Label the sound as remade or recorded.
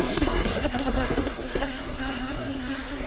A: remade